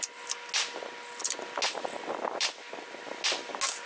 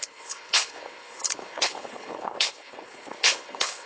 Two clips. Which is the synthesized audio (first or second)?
second